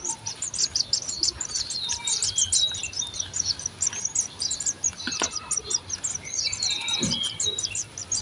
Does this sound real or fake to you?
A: real